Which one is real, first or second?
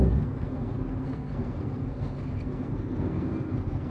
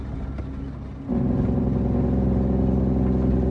second